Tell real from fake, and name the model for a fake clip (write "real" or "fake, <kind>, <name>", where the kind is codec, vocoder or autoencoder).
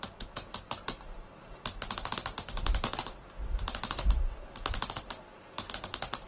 real